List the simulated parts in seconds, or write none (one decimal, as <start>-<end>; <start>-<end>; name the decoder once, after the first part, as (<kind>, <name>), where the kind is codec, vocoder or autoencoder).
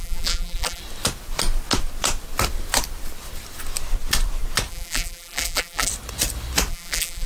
0.0-0.8 (vocoder, BigVGAN v2); 4.7-5.9; 6.7-7.3